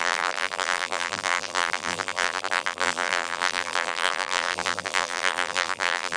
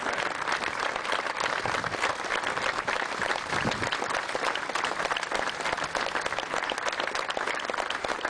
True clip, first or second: second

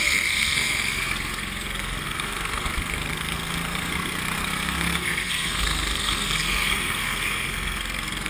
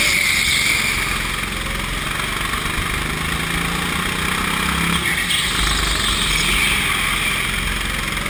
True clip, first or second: second